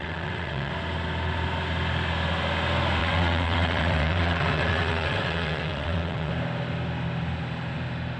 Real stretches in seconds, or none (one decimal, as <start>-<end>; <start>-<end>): 0.7-3.0; 6.3-8.2